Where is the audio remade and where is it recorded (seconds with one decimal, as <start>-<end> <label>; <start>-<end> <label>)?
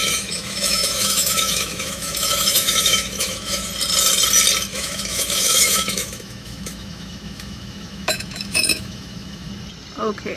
0.0-3.7 remade; 3.7-4.7 recorded; 4.7-9.5 remade; 9.5-10.4 recorded